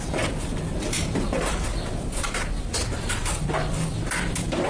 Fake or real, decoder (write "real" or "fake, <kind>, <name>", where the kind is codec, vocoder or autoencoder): real